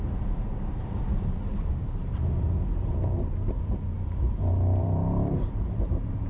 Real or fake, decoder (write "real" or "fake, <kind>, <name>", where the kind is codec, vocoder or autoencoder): fake, vocoder, BigVGAN v2